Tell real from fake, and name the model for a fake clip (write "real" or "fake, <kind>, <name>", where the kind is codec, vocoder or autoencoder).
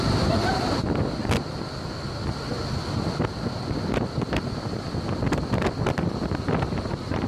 real